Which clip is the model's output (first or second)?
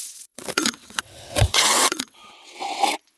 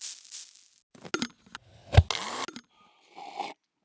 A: first